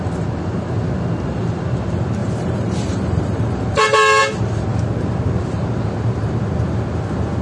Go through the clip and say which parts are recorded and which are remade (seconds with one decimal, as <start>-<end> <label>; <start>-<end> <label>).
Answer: 0.0-2.2 recorded; 2.2-4.2 remade; 4.2-7.4 recorded